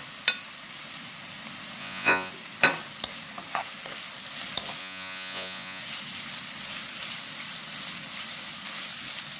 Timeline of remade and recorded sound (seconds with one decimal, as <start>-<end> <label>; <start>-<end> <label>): 0.0-1.8 recorded; 1.8-2.3 remade; 2.3-4.8 recorded; 4.8-5.8 remade; 5.8-9.4 recorded